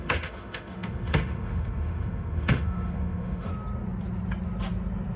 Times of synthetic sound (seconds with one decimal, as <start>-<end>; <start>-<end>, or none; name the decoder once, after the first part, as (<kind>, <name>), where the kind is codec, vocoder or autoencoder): 0.0-3.5 (autoencoder, DAC-VAE)